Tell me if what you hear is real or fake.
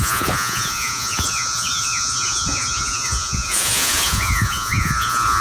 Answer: fake